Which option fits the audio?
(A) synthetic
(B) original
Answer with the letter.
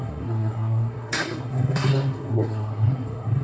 A